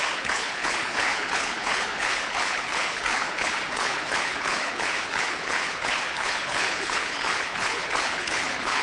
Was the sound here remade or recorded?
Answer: remade